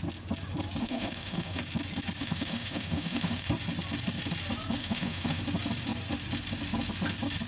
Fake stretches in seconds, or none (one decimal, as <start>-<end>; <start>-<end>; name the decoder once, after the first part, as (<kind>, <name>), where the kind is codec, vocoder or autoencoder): 0.8-1.6 (autoencoder, DAC-VAE); 2.2-3.5; 4.8-5.4